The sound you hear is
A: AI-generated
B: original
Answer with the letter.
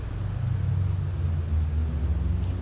B